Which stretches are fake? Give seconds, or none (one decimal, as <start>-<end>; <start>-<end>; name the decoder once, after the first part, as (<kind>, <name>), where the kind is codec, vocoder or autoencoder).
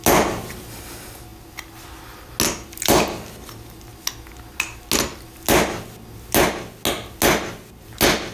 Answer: none